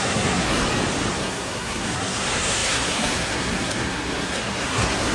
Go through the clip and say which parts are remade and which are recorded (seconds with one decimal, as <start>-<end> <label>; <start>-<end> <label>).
0.0-0.6 remade; 0.6-1.1 recorded; 1.1-5.1 remade